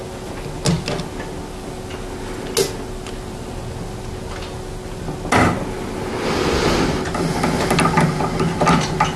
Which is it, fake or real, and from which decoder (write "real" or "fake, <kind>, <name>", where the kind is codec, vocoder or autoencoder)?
real